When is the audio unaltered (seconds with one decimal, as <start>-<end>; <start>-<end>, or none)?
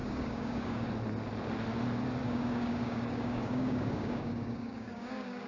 0.9-2.2